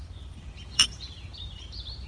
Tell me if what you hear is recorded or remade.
remade